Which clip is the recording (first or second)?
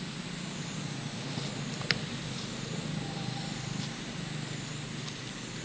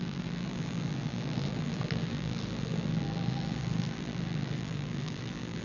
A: first